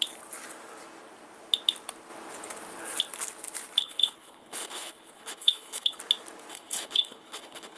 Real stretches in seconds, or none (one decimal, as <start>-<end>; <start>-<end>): 0.0-3.8; 6.0-6.5